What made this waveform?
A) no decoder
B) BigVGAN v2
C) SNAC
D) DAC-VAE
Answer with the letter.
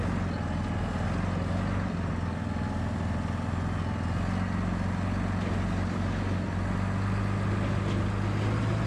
A